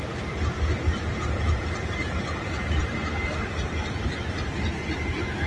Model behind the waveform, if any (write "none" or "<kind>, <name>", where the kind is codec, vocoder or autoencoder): none